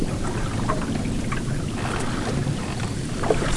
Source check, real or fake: real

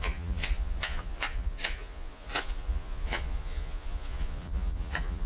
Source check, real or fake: fake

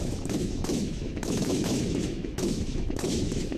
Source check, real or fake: fake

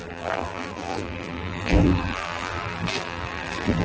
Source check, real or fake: fake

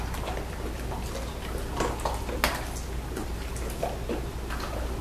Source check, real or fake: real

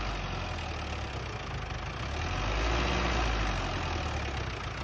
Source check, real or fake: real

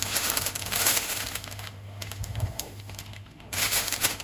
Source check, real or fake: fake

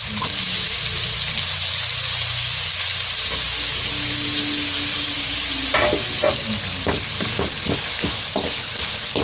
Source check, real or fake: real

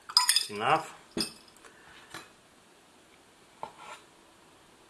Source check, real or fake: real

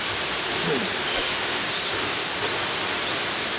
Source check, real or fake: real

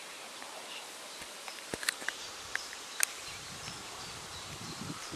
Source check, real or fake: fake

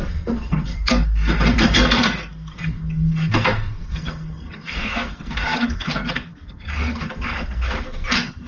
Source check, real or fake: fake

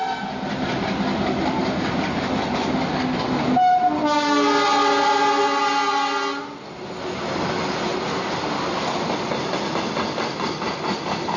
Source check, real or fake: real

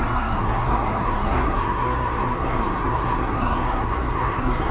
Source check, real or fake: fake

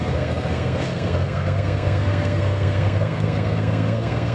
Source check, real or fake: fake